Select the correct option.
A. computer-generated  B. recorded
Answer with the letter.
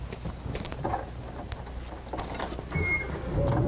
B